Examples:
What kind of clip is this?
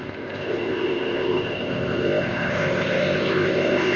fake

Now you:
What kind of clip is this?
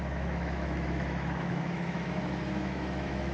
fake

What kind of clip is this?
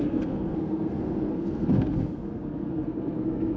fake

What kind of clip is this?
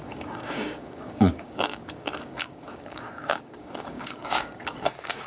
fake